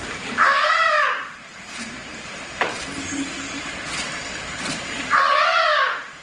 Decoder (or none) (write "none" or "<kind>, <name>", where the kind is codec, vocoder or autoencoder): vocoder, BigVGAN v2